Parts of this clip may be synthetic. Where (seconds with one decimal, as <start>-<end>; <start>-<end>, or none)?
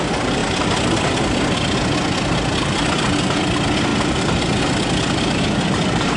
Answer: 3.9-5.6